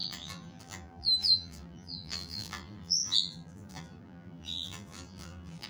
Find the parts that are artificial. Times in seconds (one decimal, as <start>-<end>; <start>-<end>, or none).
0.0-5.7